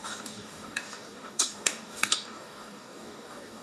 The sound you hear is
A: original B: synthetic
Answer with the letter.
B